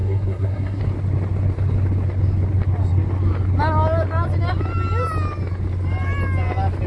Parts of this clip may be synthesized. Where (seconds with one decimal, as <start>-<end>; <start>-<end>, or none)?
0.0-0.8

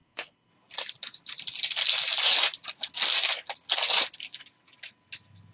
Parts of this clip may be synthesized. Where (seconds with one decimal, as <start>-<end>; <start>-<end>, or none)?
0.0-0.5

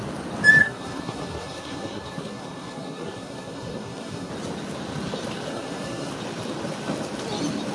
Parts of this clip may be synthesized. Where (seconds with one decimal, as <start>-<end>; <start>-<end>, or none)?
0.6-4.3; 5.5-6.1

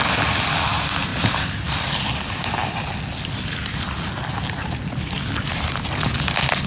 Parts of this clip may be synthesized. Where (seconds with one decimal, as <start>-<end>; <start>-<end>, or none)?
none

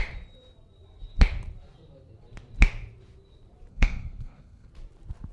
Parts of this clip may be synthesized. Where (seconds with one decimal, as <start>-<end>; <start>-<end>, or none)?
3.7-4.7